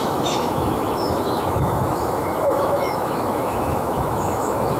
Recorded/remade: remade